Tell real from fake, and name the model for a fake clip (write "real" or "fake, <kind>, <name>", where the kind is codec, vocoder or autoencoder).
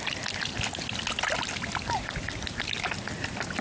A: real